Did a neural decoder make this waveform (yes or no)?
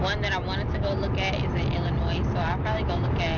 no